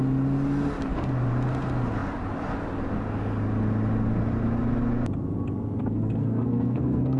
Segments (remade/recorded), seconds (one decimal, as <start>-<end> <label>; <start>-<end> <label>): 0.0-5.8 recorded; 5.8-7.2 remade

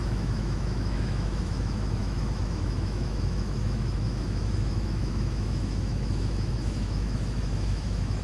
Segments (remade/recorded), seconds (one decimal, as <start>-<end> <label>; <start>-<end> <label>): 0.0-8.2 remade

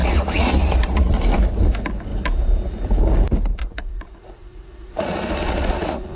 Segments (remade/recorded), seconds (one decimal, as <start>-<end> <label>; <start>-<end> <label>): 0.0-1.1 remade; 1.1-3.6 recorded; 3.6-6.2 remade